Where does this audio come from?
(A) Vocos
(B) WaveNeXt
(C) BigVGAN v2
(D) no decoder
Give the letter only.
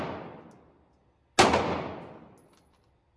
D